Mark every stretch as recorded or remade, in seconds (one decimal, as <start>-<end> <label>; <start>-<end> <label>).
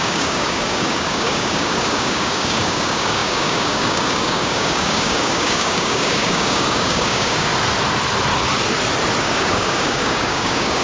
0.0-7.5 remade; 7.5-9.2 recorded; 9.2-10.8 remade